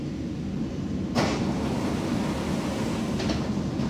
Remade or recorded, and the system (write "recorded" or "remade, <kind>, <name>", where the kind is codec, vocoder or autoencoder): recorded